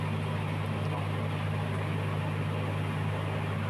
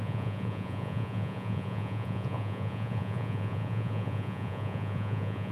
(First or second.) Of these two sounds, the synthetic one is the second